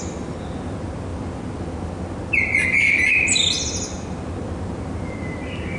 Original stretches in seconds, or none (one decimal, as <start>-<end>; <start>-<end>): 0.0-5.8